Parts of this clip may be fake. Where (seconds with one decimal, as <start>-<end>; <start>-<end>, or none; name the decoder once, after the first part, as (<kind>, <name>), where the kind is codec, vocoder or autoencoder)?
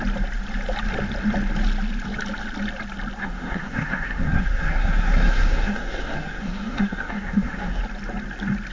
3.2-7.8 (codec, SNAC)